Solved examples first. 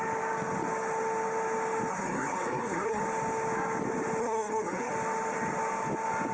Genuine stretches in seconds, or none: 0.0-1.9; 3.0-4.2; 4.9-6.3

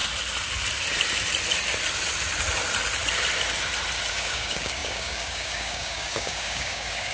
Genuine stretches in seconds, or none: 0.0-4.1

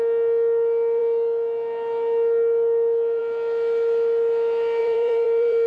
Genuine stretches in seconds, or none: 0.0-4.8

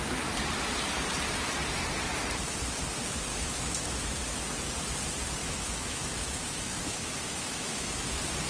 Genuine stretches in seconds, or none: 0.0-3.3; 4.2-5.4; 8.1-8.5

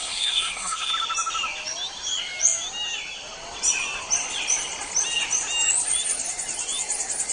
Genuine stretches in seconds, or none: 0.9-7.3

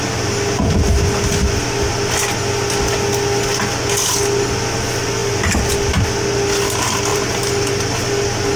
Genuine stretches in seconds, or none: 0.0-7.1; 7.7-8.6